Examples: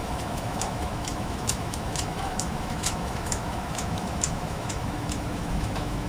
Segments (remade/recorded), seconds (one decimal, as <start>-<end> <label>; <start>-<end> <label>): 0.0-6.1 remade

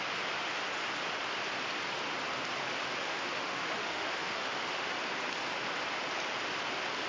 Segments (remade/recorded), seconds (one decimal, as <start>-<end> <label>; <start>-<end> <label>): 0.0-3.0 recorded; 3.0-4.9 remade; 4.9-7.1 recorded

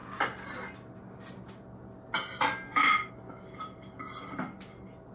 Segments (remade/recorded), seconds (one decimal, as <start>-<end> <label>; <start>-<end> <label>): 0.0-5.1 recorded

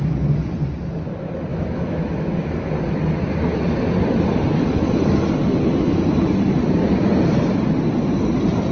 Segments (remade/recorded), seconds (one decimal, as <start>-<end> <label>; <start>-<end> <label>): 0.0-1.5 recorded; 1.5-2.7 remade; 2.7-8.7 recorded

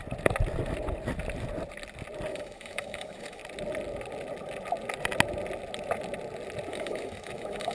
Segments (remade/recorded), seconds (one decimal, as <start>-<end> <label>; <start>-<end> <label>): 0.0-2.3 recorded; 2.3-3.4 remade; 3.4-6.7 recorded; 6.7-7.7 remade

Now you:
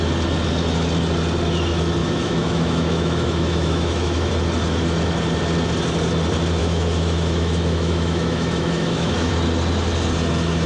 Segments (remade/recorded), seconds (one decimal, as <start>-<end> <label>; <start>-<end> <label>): 0.0-2.0 recorded; 2.0-4.3 remade; 4.3-6.6 recorded; 6.6-9.3 remade; 9.3-10.7 recorded

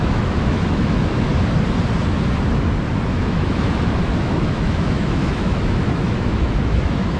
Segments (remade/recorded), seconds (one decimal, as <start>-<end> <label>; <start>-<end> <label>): 0.0-1.3 remade; 1.3-3.1 recorded; 3.1-7.2 remade

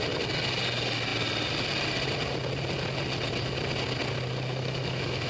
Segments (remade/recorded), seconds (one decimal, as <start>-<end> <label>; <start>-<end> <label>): 0.0-4.5 recorded; 4.5-5.3 remade